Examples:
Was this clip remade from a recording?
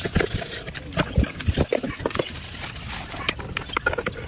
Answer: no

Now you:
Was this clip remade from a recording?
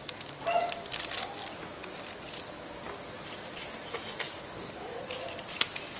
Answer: no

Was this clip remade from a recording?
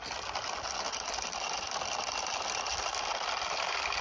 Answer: no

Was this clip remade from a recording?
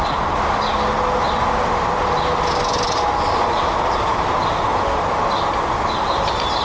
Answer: no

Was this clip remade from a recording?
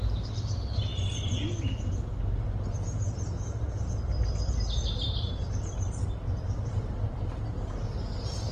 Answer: yes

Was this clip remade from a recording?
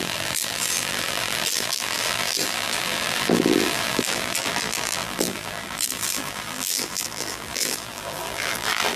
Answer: yes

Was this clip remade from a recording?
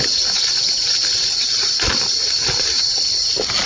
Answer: no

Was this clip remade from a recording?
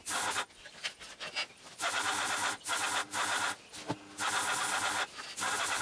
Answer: no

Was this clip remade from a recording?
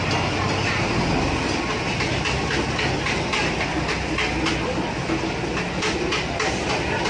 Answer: no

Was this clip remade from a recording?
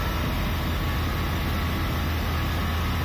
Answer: no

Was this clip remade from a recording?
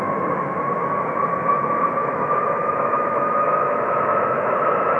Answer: yes